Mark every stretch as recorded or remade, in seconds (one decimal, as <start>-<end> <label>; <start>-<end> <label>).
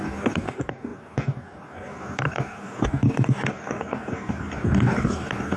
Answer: 0.0-5.6 remade